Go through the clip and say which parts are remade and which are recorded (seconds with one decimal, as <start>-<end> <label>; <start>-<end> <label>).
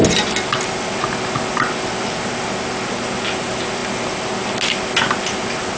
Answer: 0.0-5.8 recorded